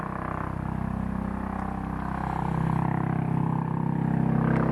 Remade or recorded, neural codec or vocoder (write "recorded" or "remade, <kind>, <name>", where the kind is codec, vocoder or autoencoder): recorded